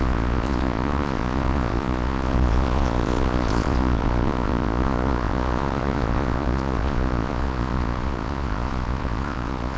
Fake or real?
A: fake